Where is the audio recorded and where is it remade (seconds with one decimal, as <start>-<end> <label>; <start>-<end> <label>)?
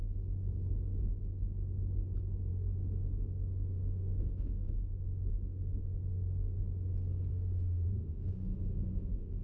0.0-2.5 recorded; 2.5-6.6 remade; 6.6-7.3 recorded; 7.3-9.4 remade